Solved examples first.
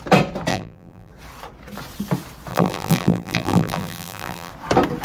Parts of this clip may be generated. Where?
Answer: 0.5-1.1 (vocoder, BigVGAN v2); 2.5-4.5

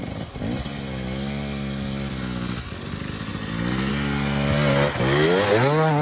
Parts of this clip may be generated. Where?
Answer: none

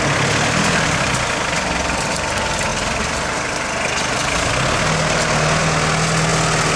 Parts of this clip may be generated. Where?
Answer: none

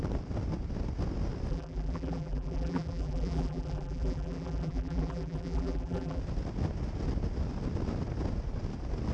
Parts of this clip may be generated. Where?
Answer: 1.5-6.2 (vocoder, BigVGAN v2)

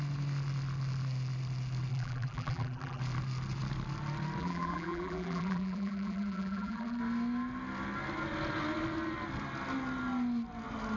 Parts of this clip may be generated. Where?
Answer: 1.9-3.0 (vocoder, BigVGAN v2); 4.4-7.0